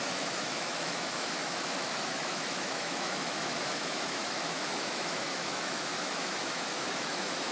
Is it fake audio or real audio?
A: fake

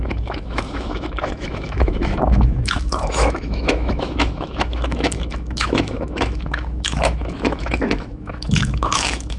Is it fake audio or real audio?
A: fake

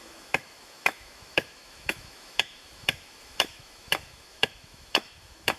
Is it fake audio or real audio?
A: fake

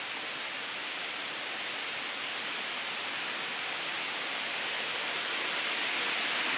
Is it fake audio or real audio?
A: real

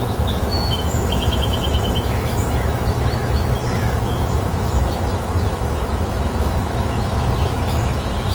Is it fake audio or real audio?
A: fake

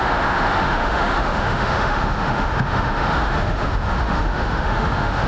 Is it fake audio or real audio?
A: fake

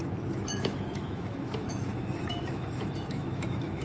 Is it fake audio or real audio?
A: fake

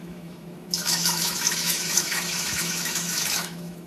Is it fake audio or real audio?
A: fake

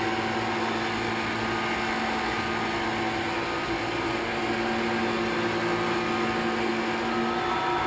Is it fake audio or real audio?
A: real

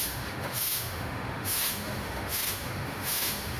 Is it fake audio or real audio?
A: fake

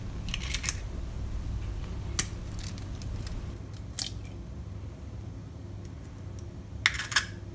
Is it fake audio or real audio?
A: real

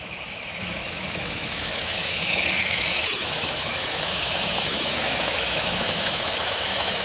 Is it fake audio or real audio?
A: fake